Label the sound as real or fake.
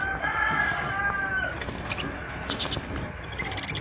real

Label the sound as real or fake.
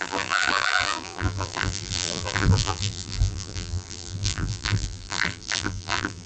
fake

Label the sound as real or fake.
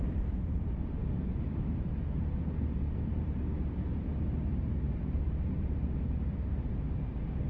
fake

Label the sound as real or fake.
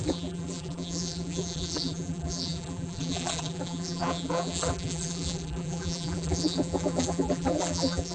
fake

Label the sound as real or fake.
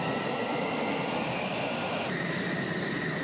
fake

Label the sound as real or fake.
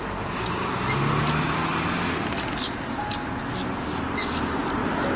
real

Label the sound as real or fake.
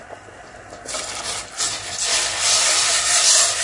fake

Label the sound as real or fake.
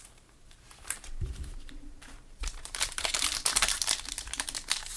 fake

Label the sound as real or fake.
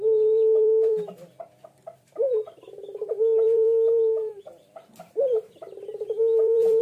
fake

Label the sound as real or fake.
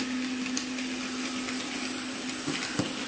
real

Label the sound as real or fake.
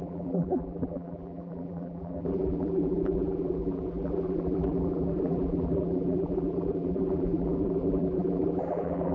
fake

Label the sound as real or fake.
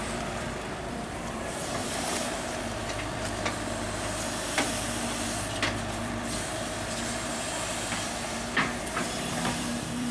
fake